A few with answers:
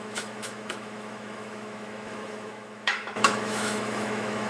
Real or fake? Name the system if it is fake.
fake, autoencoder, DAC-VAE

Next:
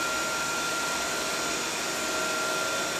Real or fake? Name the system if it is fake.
real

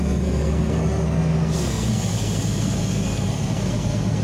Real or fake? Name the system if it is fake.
fake, codec, SNAC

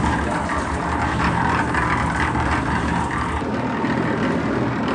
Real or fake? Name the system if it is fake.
real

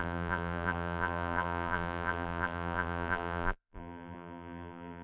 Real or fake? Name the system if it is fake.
fake, vocoder, BigVGAN v2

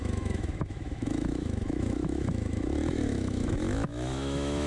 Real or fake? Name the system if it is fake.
fake, autoencoder, DAC-VAE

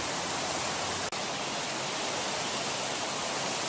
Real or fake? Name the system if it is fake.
real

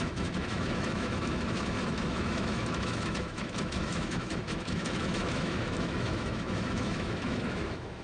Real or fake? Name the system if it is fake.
fake, autoencoder, DAC-VAE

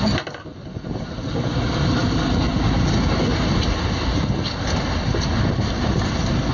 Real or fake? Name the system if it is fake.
real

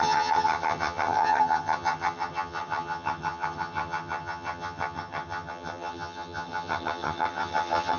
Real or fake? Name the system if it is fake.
fake, vocoder, HiFi-GAN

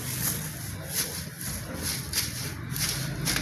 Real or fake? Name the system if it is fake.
real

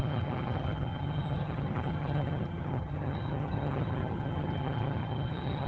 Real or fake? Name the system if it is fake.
fake, vocoder, HiFi-GAN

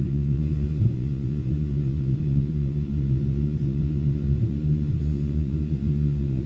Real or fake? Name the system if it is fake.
fake, vocoder, Vocos